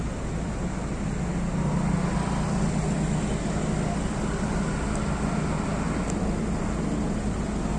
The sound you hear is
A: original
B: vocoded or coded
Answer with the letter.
A